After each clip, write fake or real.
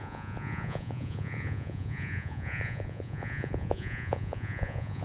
fake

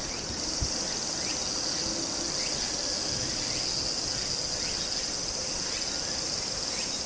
real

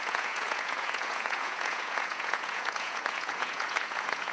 fake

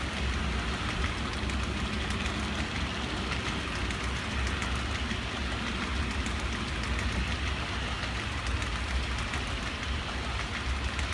real